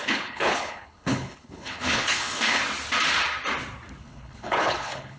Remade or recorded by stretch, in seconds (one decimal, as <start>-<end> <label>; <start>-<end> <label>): 0.0-2.6 remade; 2.6-4.0 recorded; 4.0-5.2 remade